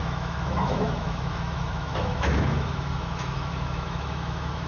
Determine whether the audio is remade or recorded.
remade